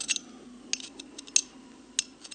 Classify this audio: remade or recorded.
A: recorded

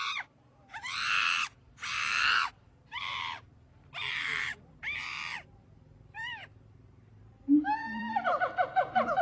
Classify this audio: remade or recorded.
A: remade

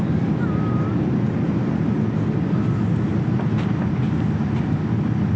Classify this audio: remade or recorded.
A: recorded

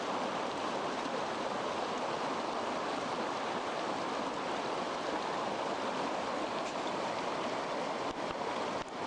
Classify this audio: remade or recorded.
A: recorded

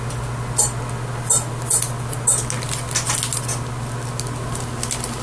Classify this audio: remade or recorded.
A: recorded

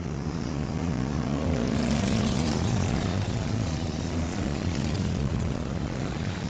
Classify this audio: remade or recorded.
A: remade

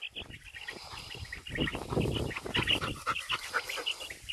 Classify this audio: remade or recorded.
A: recorded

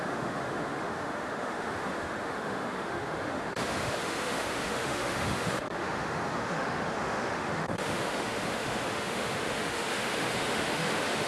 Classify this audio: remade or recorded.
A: remade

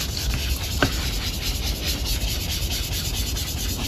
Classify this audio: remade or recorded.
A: recorded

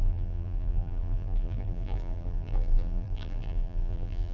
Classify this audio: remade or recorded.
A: remade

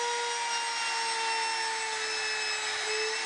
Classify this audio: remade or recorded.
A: recorded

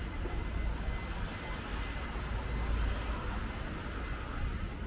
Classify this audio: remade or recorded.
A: recorded